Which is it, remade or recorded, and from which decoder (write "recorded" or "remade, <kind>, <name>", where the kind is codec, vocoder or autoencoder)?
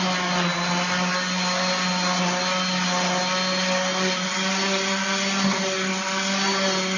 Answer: recorded